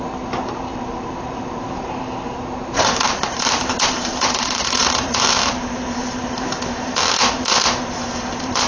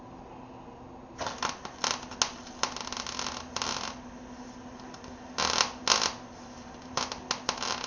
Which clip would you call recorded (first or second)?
second